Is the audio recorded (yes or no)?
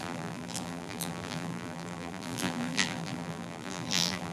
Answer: no